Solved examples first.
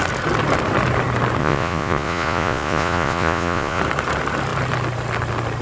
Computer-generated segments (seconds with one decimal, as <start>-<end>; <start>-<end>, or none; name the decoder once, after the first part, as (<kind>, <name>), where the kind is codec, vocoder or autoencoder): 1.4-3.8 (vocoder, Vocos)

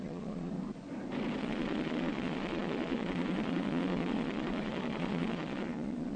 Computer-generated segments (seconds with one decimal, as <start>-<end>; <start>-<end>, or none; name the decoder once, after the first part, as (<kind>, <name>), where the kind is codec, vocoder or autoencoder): 0.0-0.5 (vocoder, Vocos); 1.4-6.2

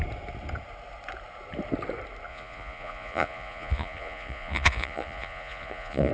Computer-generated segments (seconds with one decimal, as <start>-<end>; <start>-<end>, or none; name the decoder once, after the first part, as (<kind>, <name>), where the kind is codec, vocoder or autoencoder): 2.3-6.1 (vocoder, Vocos)